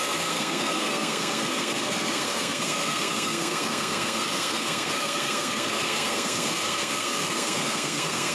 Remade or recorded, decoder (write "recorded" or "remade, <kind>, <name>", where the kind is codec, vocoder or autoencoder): remade, codec, SNAC